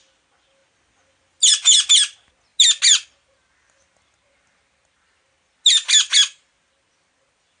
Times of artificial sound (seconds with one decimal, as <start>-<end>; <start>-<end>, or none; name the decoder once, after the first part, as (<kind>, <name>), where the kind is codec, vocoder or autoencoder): none